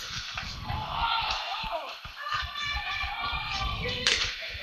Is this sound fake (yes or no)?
yes